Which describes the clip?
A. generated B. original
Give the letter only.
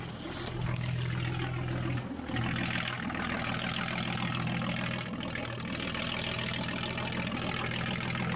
B